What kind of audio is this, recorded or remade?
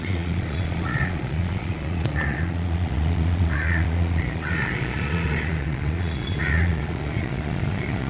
remade